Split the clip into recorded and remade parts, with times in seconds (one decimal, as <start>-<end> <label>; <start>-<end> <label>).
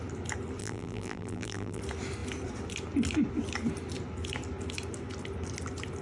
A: 0.0-0.6 recorded; 0.6-1.8 remade; 1.8-6.0 recorded